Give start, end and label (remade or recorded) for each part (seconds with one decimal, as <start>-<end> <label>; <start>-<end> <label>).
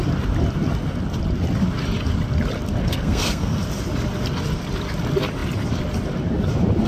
0.0-2.8 recorded; 2.8-3.6 remade; 3.6-6.9 recorded